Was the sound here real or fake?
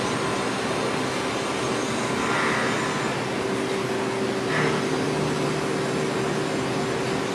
real